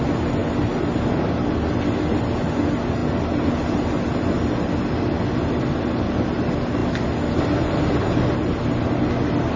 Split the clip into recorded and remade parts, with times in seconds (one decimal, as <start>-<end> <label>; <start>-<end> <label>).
0.0-9.6 recorded